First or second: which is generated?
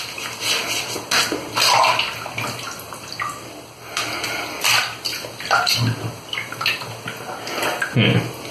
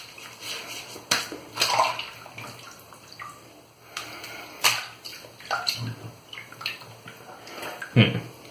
second